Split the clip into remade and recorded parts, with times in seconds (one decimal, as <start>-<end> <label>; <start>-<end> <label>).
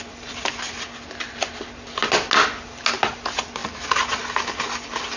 0.0-3.6 recorded; 3.6-4.1 remade; 4.1-5.2 recorded